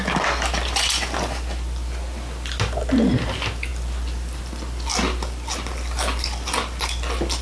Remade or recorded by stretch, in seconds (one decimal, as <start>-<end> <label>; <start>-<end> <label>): 0.0-7.4 recorded

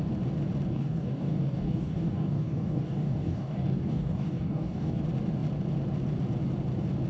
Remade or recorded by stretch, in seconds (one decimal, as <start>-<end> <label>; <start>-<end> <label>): 0.0-0.7 recorded; 0.7-5.0 remade; 5.0-7.1 recorded

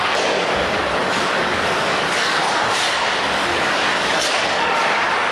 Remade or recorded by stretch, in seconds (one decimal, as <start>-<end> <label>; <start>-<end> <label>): 0.0-5.3 remade

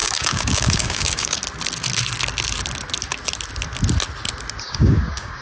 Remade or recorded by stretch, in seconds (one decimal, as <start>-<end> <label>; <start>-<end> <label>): 0.0-1.4 remade; 1.4-4.6 recorded; 4.6-5.4 remade

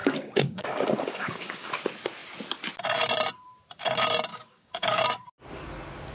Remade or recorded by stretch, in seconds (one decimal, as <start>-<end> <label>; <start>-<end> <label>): 0.0-1.7 remade; 1.7-4.3 recorded; 4.3-5.0 remade; 5.0-6.1 recorded

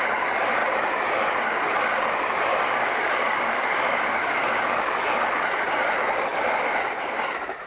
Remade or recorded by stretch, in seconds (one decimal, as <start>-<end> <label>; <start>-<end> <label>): 0.0-2.5 recorded; 2.5-4.7 remade; 4.7-7.7 recorded